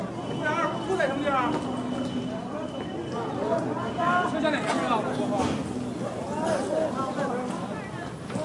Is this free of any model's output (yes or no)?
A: yes